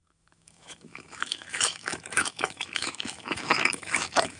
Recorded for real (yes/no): no